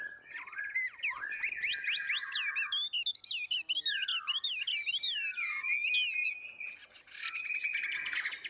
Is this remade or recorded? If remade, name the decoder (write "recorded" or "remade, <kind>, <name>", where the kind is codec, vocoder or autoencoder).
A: recorded